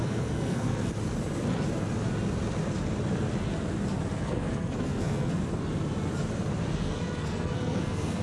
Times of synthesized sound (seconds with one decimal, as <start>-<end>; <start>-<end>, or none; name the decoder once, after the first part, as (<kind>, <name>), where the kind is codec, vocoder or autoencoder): 0.0-0.9 (codec, SNAC); 4.2-5.4; 6.7-8.2